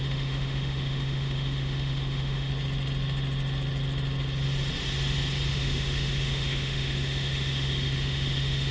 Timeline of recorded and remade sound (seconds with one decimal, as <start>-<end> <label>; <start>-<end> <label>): 0.0-2.5 remade; 2.5-5.5 recorded; 5.5-8.7 remade